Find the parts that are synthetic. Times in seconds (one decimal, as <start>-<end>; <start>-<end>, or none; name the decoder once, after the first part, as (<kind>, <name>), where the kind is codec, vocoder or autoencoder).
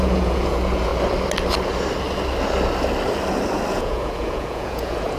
0.0-0.9 (vocoder, Vocos); 3.7-5.2